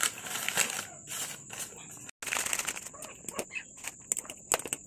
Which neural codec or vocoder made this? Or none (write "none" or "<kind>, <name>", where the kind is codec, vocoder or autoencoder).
none